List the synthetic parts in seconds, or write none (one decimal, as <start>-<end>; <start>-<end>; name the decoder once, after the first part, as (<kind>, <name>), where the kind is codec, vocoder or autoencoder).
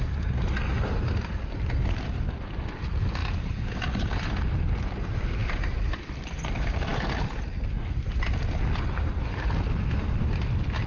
none